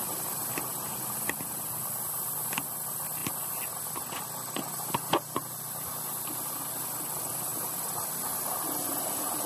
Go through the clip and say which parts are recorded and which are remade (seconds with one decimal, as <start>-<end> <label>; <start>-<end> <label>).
0.0-9.5 recorded